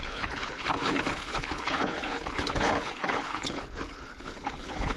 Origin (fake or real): fake